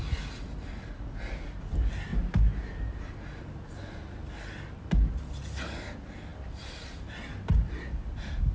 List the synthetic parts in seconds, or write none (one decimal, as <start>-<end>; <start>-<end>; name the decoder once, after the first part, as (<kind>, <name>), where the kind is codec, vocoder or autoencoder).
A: none